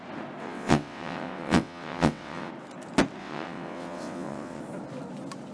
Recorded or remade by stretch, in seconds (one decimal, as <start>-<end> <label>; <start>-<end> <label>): 0.0-0.4 recorded; 0.4-2.5 remade; 2.5-3.2 recorded; 3.2-4.6 remade; 4.6-5.5 recorded